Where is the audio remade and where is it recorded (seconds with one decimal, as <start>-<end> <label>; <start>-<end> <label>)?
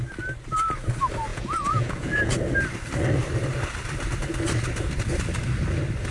0.0-1.3 recorded; 1.3-2.3 remade; 2.3-6.1 recorded